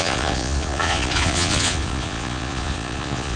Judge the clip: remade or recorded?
remade